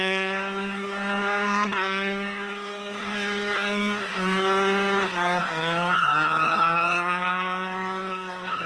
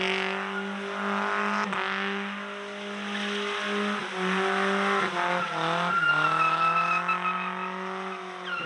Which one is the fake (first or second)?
first